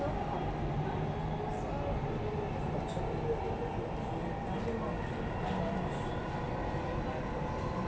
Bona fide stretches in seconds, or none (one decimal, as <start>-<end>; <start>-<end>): 0.0-7.9